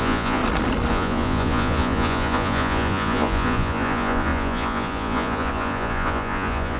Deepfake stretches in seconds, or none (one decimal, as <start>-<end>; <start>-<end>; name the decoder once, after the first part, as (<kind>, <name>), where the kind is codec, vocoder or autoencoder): 0.0-0.4 (vocoder, Vocos); 0.9-6.8